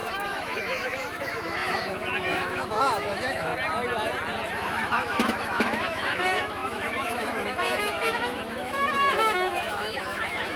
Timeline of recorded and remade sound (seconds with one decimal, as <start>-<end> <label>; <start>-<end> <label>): 0.0-3.5 remade; 3.5-4.5 recorded; 4.5-10.6 remade